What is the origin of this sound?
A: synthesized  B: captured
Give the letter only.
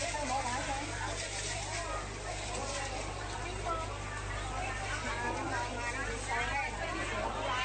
B